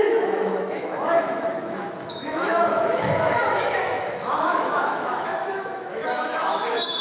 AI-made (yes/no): yes